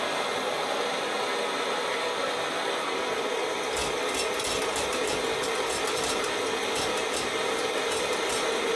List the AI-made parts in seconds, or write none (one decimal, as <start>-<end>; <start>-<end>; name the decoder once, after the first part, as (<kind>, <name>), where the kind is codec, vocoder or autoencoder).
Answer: none

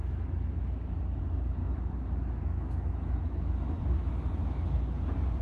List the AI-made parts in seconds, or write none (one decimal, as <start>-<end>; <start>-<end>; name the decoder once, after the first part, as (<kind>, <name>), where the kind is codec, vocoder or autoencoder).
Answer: 0.0-1.2 (autoencoder, DAC-VAE); 1.6-4.8